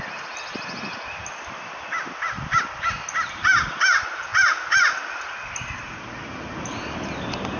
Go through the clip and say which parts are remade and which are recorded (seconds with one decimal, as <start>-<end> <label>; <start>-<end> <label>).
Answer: 0.0-7.6 recorded